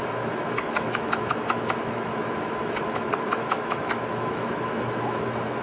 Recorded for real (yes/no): no